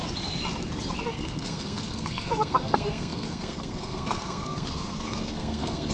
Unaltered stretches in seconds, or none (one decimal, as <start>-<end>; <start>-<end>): 0.0-1.1